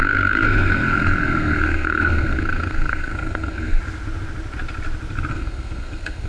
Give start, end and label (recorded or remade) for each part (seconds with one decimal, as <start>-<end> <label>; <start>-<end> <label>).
0.0-3.8 remade; 3.8-5.3 recorded; 5.3-6.3 remade